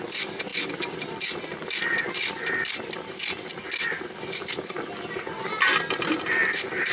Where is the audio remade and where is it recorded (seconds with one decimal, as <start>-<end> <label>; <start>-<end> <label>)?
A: 0.0-6.9 recorded